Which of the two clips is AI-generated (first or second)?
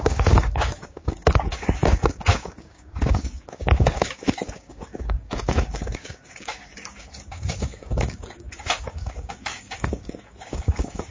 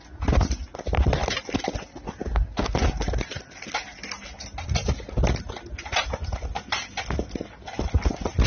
first